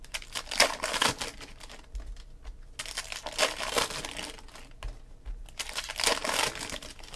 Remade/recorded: recorded